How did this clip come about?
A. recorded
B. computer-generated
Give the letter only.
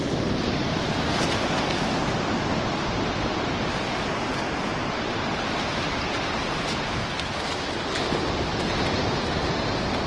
A